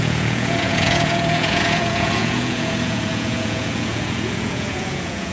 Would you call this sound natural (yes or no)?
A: no